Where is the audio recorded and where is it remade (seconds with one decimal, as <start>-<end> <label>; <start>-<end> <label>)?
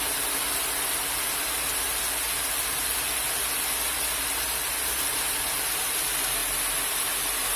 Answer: 0.0-5.1 recorded; 5.1-5.9 remade; 5.9-7.6 recorded